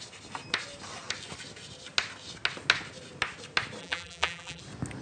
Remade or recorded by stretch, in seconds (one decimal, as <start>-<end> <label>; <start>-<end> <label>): 0.0-3.8 recorded; 3.8-4.6 remade; 4.6-5.0 recorded